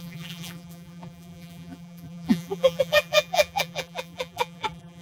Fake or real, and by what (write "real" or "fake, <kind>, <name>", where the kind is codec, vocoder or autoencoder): fake, vocoder, BigVGAN v2